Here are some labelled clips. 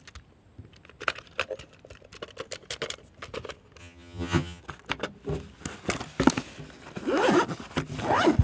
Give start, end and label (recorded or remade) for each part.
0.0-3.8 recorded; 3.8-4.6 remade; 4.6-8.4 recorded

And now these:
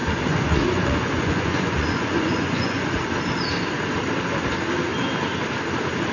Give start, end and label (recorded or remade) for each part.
0.0-3.0 remade; 3.0-6.1 recorded

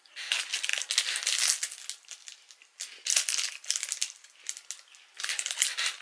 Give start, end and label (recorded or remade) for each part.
0.0-6.0 recorded

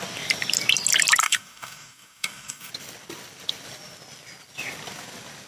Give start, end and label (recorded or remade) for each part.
0.0-1.2 recorded; 1.2-2.7 remade; 2.7-5.5 recorded

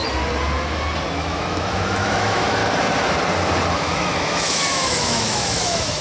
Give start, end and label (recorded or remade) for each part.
0.0-1.2 recorded; 1.2-2.6 remade; 2.6-3.7 recorded; 3.7-6.0 remade